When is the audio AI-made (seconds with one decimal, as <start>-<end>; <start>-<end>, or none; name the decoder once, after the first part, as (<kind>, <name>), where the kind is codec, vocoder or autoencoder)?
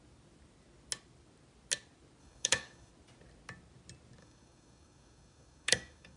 2.2-2.9 (codec, DAC); 4.2-6.2